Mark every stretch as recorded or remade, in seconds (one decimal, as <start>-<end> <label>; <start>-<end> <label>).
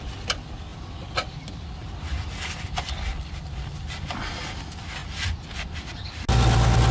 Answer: 0.0-3.1 recorded; 3.1-4.4 remade; 4.4-5.0 recorded; 5.0-5.8 remade; 5.8-6.9 recorded